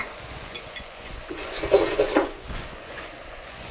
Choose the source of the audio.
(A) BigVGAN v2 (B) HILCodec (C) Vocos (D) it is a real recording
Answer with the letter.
C